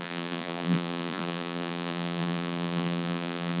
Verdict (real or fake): fake